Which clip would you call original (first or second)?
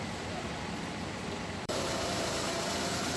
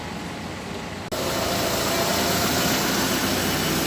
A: second